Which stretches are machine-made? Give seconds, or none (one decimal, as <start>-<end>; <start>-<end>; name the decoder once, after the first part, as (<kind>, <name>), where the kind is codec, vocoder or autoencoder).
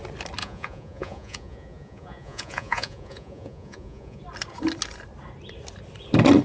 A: 0.4-4.2 (vocoder, Vocos)